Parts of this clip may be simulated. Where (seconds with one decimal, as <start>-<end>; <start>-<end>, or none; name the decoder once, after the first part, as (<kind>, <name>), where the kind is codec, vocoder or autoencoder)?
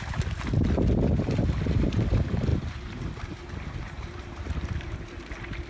2.5-4.4 (vocoder, BigVGAN v2)